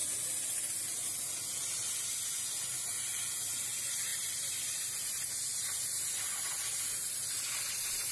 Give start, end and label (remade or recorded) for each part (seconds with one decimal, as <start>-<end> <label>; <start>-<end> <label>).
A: 0.0-8.1 recorded